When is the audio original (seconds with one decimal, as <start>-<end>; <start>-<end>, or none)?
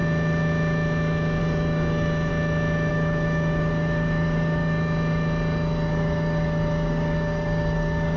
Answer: 0.0-1.4; 2.3-2.9; 4.6-5.9